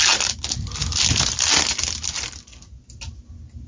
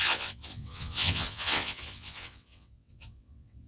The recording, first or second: first